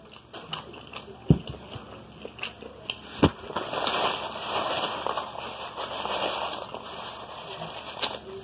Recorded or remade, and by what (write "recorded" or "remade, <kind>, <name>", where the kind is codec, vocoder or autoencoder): recorded